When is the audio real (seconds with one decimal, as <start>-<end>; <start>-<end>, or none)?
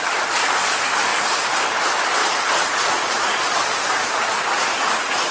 0.0-2.2; 4.0-5.3